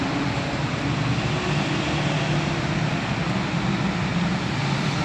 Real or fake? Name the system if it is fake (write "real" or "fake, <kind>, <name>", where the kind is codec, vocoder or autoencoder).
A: real